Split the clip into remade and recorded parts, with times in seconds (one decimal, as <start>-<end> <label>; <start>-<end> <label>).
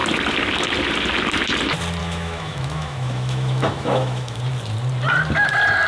0.0-2.0 recorded; 2.0-4.4 remade; 4.4-5.9 recorded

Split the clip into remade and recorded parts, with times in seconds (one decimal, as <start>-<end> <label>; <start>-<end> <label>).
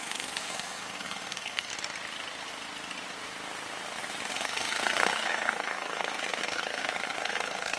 0.0-1.7 remade; 1.7-4.3 recorded; 4.3-7.8 remade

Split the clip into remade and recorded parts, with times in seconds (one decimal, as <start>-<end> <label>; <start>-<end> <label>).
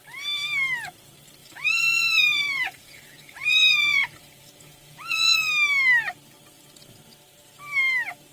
0.0-1.4 recorded; 1.4-5.5 remade; 5.5-8.3 recorded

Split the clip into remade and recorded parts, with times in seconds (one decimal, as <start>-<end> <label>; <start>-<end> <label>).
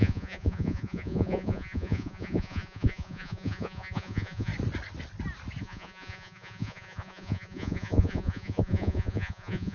0.0-4.5 remade; 4.5-5.6 recorded; 5.6-9.7 remade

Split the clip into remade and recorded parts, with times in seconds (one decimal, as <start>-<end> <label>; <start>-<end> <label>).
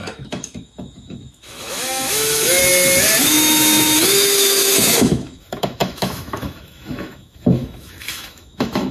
0.0-2.6 remade; 2.6-3.2 recorded; 3.2-8.9 remade